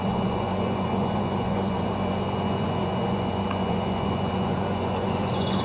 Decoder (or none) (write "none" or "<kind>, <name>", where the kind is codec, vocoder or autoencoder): vocoder, Vocos